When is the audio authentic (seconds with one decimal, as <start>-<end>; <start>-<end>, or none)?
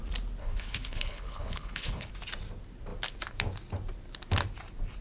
0.0-0.4; 2.1-5.0